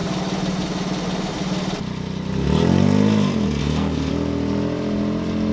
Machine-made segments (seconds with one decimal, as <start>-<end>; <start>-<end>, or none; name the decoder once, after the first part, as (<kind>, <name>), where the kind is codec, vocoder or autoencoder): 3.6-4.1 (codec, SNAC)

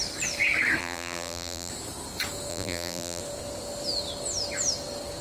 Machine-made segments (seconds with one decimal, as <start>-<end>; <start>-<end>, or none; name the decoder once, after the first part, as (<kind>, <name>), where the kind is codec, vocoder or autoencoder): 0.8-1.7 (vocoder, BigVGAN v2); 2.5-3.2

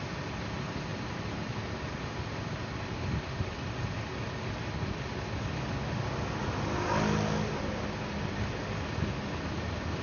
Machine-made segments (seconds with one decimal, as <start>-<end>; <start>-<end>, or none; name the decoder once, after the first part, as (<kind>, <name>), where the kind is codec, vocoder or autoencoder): none

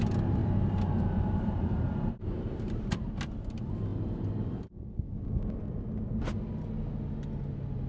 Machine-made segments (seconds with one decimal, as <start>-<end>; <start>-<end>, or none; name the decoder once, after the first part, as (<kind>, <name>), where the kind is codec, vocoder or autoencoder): 0.4-3.1 (vocoder, BigVGAN v2)

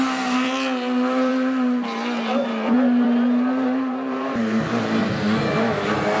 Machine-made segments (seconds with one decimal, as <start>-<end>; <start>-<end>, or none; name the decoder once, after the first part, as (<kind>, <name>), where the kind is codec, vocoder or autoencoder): 1.3-5.0 (vocoder, BigVGAN v2)

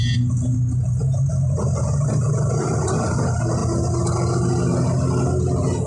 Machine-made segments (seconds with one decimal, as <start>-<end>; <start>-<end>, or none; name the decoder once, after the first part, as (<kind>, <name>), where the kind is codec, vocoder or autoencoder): none

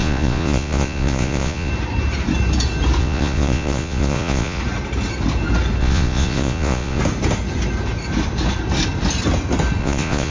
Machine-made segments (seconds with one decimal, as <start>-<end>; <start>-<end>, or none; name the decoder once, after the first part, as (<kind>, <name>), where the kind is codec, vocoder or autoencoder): 0.0-1.7 (vocoder, Vocos); 3.0-4.6; 5.8-7.0; 9.8-10.3